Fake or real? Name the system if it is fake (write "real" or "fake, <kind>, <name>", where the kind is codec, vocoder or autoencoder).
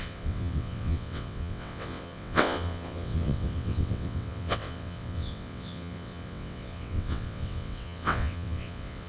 fake, vocoder, WaveNeXt